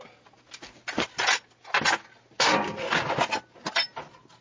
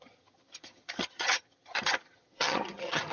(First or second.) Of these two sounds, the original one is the first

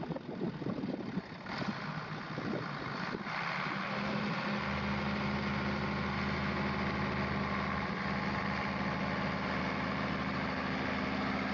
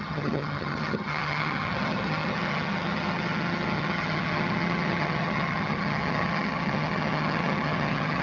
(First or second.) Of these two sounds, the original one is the first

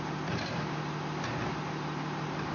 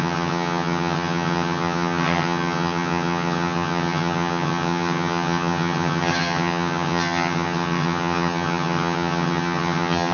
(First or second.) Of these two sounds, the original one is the first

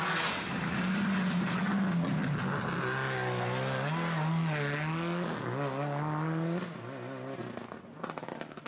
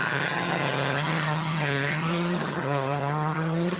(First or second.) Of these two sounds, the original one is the first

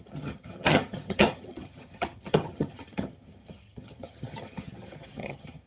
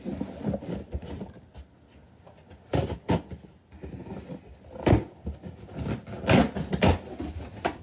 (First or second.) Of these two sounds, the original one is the second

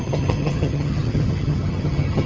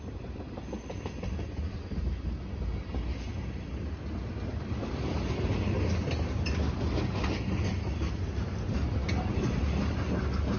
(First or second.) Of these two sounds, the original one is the second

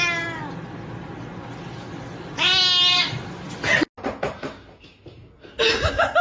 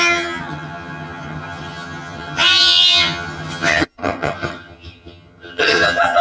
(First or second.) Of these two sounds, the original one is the first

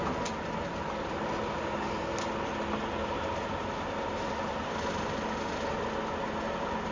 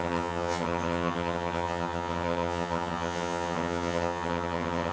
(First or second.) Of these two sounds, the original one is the first